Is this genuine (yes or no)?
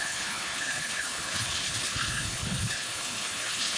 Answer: no